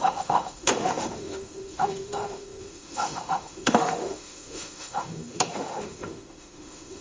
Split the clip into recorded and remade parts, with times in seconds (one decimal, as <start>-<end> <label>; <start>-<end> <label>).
0.0-7.0 remade

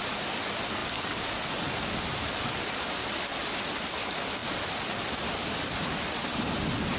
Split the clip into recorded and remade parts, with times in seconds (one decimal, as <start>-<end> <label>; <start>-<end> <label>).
0.0-7.0 recorded

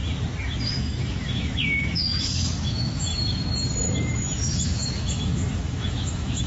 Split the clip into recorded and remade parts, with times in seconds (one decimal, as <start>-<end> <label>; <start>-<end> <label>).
0.0-0.6 recorded; 0.6-3.1 remade; 3.1-4.0 recorded; 4.0-6.5 remade

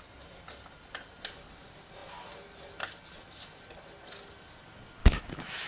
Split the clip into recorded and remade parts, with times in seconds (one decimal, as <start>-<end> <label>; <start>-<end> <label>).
0.0-5.0 recorded; 5.0-5.7 remade

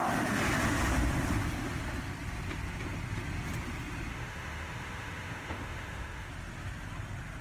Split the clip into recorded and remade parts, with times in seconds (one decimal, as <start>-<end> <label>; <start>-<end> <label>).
0.0-4.1 recorded; 4.1-6.3 remade; 6.3-7.4 recorded

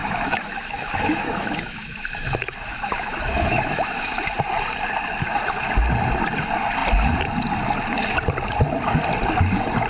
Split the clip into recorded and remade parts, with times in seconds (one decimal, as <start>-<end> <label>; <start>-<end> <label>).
0.0-4.2 remade; 4.2-9.9 recorded